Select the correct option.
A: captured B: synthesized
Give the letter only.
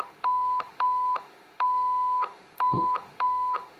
B